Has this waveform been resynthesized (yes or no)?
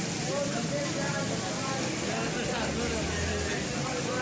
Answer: no